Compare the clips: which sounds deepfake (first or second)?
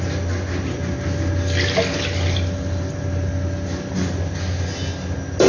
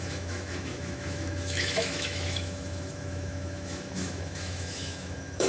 second